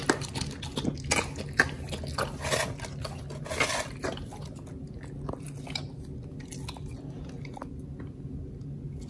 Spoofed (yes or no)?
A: no